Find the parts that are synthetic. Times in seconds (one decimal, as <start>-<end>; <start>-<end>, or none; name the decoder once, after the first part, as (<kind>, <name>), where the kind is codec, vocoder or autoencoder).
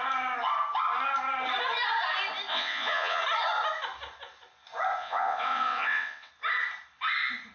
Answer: 2.5-3.2 (vocoder, WaveNeXt); 5.0-6.3